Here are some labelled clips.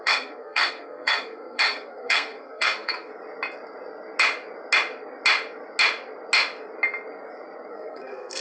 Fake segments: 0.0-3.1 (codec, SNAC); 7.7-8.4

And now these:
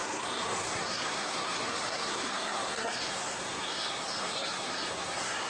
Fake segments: 0.0-5.5 (codec, SNAC)

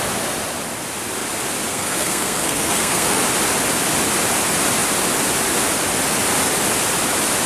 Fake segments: 1.7-3.2 (codec, SNAC)